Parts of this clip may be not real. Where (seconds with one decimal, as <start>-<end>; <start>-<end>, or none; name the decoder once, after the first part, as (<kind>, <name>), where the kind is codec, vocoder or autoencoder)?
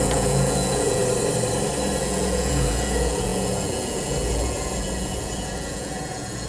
0.0-1.0 (vocoder, Vocos); 2.0-6.5